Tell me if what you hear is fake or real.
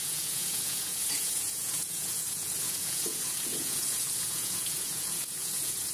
fake